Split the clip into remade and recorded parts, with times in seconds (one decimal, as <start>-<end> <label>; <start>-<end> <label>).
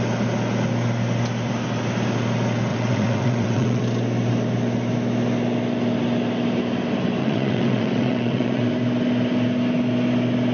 0.0-2.7 recorded; 2.7-3.8 remade; 3.8-7.2 recorded; 7.2-8.6 remade; 8.6-10.5 recorded